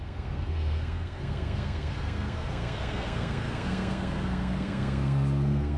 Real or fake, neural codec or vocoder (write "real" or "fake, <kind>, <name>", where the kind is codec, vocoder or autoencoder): fake, codec, SNAC